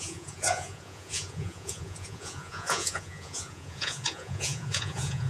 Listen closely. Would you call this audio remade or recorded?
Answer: remade